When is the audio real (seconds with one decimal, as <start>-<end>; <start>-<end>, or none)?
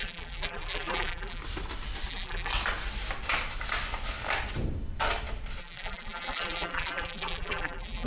1.4-2.1; 2.5-5.6